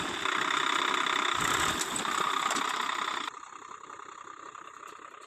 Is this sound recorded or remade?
recorded